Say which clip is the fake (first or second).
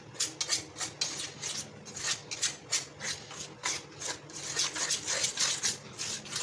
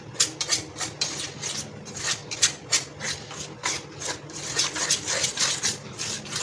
second